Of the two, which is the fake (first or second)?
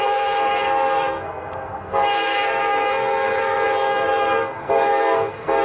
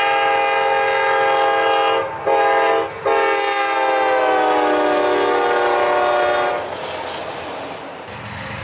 first